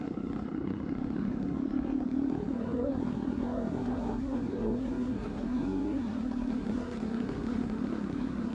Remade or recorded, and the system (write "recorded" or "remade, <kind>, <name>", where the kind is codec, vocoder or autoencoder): remade, codec, SNAC